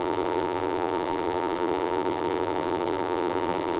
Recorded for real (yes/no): no